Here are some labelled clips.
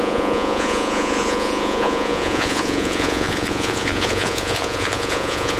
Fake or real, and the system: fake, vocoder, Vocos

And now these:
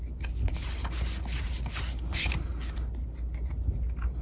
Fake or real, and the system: real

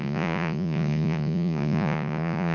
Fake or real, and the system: fake, vocoder, Vocos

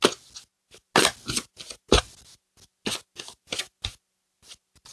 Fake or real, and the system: real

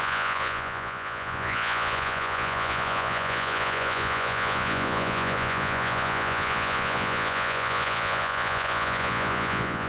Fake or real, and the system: fake, vocoder, Vocos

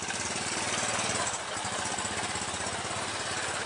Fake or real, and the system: real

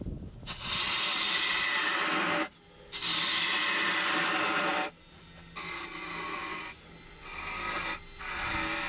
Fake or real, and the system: real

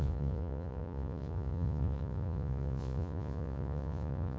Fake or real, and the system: fake, vocoder, Vocos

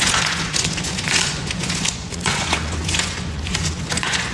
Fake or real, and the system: fake, vocoder, Vocos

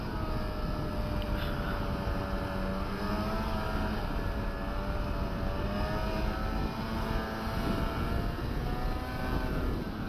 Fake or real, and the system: real